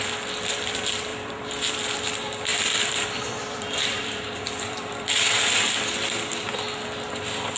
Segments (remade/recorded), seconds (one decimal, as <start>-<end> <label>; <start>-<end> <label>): 0.0-1.1 recorded; 1.1-2.1 remade; 2.1-2.5 recorded; 2.5-5.7 remade; 5.7-7.6 recorded